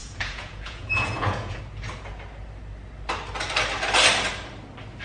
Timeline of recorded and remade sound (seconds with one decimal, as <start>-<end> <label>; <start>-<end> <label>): 0.0-1.6 remade; 1.6-5.0 recorded